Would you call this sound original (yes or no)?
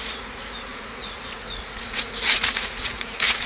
no